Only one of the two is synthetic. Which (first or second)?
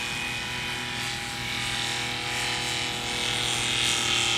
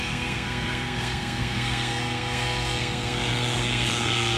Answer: second